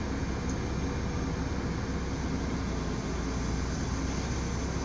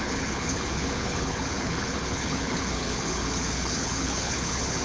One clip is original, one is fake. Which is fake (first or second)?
second